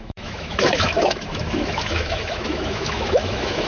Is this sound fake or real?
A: fake